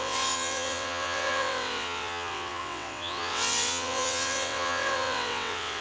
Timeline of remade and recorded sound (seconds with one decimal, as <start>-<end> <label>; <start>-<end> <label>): 0.0-5.8 remade